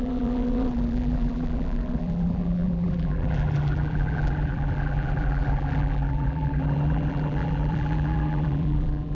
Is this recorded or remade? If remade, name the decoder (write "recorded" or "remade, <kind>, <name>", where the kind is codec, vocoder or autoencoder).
remade, vocoder, BigVGAN v2